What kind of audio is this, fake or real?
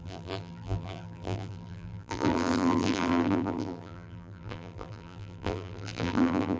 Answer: fake